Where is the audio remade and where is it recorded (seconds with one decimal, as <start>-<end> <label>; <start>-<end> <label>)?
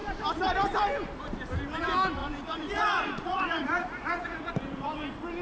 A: 0.0-2.2 recorded; 2.2-4.5 remade; 4.5-5.4 recorded